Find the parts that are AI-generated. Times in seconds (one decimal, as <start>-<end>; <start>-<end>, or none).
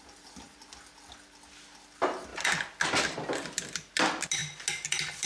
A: none